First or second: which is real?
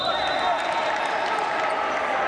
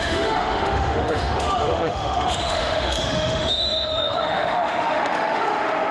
first